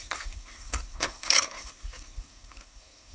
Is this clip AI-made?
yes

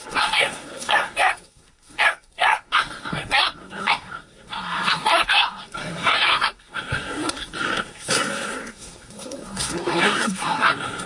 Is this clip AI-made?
yes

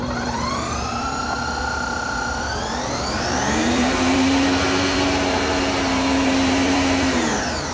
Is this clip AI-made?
yes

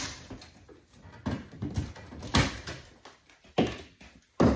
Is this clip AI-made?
no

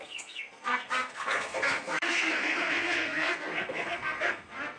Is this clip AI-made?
yes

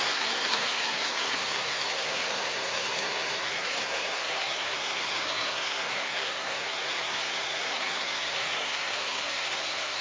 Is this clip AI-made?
yes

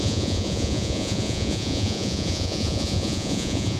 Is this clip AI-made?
yes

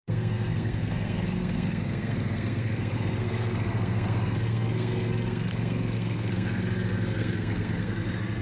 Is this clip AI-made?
yes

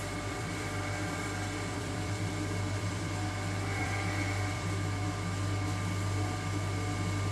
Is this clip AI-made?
yes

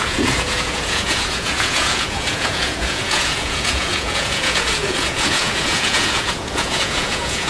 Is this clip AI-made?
yes